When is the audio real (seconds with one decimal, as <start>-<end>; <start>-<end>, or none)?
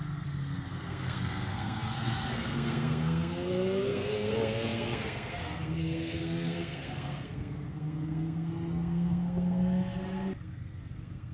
none